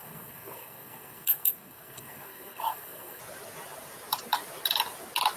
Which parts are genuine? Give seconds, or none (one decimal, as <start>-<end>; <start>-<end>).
3.2-5.4